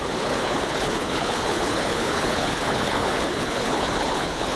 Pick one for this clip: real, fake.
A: fake